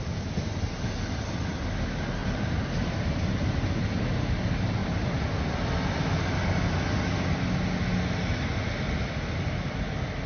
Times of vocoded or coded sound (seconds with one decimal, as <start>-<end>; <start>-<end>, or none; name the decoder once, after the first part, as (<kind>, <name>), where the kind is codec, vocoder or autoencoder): 2.2-3.1 (vocoder, BigVGAN v2); 4.8-5.3

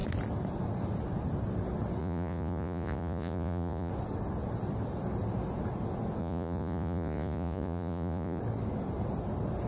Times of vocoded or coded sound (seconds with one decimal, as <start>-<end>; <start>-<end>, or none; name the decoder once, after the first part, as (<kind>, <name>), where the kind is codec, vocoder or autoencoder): 2.0-3.9 (vocoder, Vocos); 6.2-8.4

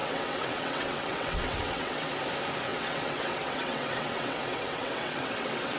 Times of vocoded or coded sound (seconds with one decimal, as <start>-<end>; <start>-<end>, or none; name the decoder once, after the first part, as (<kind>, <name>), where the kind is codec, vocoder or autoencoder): 0.0-2.1 (vocoder, WaveNeXt); 2.7-5.8

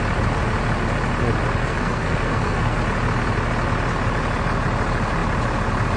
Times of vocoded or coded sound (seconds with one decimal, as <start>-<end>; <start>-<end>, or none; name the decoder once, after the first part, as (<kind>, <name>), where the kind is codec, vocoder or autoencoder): 1.6-2.8 (codec, SNAC)

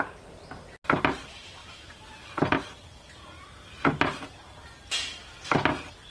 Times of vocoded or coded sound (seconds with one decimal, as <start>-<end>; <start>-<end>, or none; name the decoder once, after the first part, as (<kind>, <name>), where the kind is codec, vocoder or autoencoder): 1.6-2.3 (vocoder, BigVGAN v2)